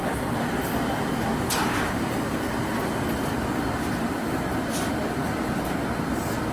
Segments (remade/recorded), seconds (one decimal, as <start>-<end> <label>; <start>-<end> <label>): 0.0-3.9 remade; 3.9-6.5 recorded